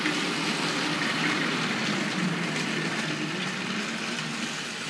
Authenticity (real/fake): real